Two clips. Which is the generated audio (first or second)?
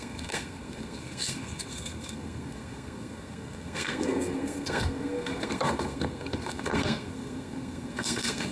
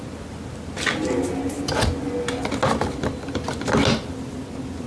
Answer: first